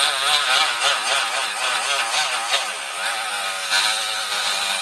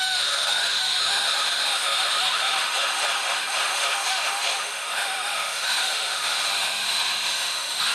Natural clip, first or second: first